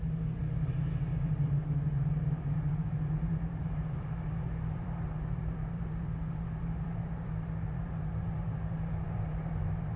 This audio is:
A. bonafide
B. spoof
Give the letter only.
B